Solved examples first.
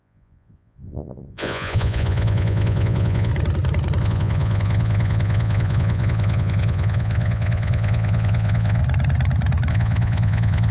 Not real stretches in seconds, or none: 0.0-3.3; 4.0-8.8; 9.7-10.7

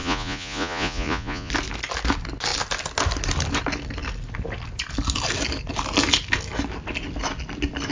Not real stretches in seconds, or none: 0.0-1.5